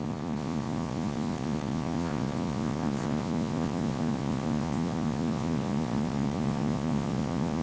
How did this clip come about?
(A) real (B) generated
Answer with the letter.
B